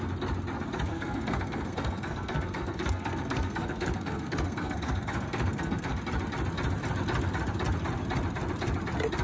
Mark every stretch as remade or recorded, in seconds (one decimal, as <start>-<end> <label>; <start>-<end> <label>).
0.0-0.9 recorded; 0.9-6.0 remade; 6.0-9.2 recorded